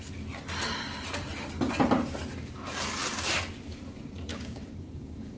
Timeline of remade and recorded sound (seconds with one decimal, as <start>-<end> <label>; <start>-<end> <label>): 0.0-4.3 recorded; 4.3-5.4 remade